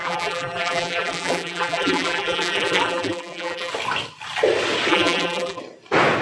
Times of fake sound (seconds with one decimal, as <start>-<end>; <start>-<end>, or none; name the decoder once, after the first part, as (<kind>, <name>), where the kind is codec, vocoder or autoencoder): 0.0-3.7 (vocoder, BigVGAN v2); 4.9-5.6